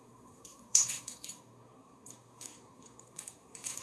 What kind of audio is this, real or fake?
fake